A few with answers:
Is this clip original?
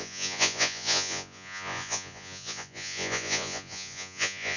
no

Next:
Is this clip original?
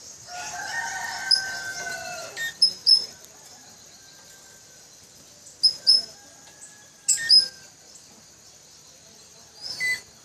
yes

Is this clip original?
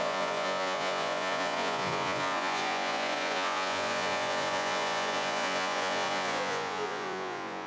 no